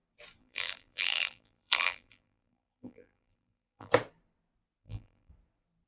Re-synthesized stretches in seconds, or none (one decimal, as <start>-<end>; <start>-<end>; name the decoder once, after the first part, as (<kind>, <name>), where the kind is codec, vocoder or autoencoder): 0.4-3.9 (vocoder, BigVGAN v2); 4.8-5.3